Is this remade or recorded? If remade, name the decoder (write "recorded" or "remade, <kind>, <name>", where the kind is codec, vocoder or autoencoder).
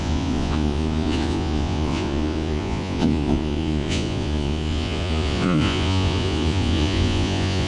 remade, vocoder, Vocos